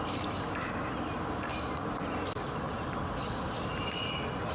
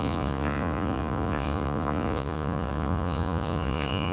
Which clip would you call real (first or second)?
first